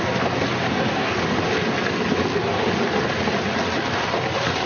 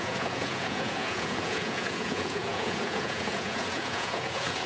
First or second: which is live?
first